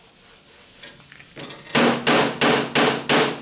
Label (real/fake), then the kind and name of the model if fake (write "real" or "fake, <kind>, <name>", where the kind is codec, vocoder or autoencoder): real